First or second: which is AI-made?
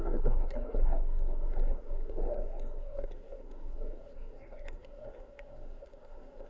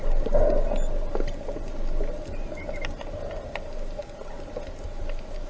first